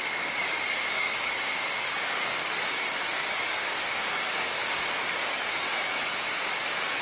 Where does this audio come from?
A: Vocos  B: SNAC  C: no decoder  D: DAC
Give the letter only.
D